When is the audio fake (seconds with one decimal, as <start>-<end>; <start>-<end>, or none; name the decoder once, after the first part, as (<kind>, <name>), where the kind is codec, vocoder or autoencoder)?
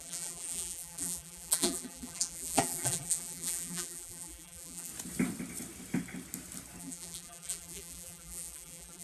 0.0-4.9 (vocoder, BigVGAN v2); 6.8-9.0